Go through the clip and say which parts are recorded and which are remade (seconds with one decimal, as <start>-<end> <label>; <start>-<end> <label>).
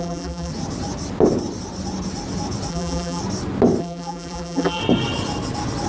0.0-0.5 remade; 0.5-2.7 recorded; 2.7-3.2 remade; 3.2-3.8 recorded; 3.8-4.8 remade; 4.8-5.9 recorded